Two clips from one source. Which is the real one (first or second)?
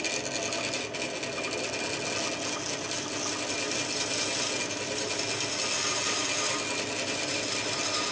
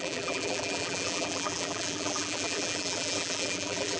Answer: first